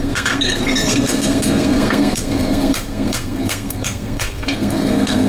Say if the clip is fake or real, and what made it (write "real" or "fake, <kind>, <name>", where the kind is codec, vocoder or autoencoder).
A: fake, codec, SNAC